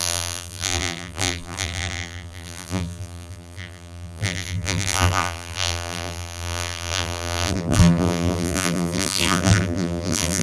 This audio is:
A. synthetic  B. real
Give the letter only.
A